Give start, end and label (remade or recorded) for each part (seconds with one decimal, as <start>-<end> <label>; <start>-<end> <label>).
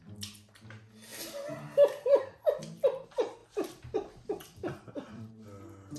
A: 0.0-3.4 recorded; 3.4-5.3 remade; 5.3-6.0 recorded